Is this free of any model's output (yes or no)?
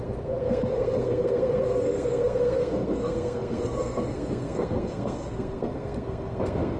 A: no